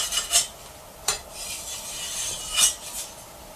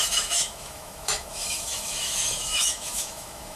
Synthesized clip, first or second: second